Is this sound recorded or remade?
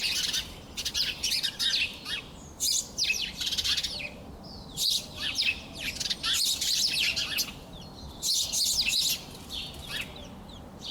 recorded